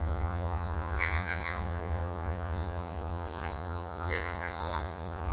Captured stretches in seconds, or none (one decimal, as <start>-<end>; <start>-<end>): none